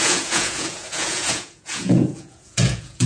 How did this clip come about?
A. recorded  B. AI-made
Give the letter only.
B